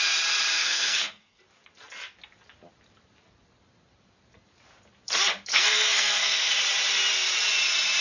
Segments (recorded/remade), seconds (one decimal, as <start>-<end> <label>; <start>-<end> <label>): 0.0-0.5 recorded; 0.5-1.4 remade; 1.4-5.5 recorded; 5.5-6.5 remade; 6.5-8.0 recorded

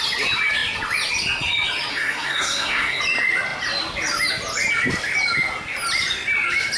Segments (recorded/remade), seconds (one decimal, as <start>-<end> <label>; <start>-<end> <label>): 0.0-1.9 recorded; 1.9-3.0 remade; 3.0-6.8 recorded